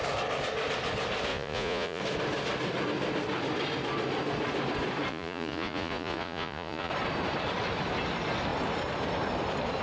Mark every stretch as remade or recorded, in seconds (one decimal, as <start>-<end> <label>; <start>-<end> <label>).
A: 0.0-1.3 recorded; 1.3-2.0 remade; 2.0-5.1 recorded; 5.1-6.9 remade; 6.9-9.8 recorded